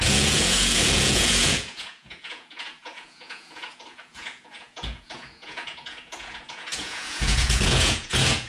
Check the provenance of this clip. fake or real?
fake